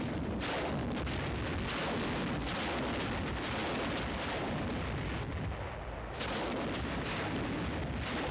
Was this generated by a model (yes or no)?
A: no